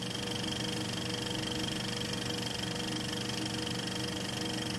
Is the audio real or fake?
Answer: real